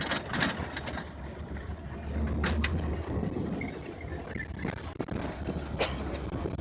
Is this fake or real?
real